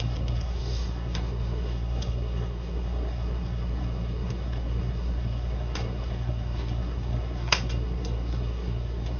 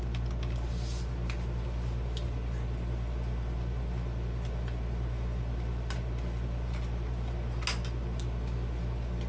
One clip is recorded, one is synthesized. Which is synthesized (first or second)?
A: first